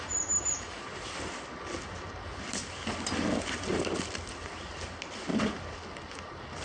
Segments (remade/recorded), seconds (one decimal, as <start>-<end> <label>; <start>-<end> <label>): 0.0-6.6 recorded